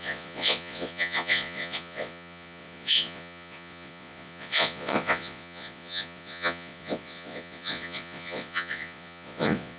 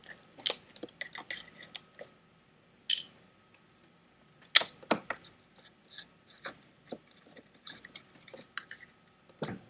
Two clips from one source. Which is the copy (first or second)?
first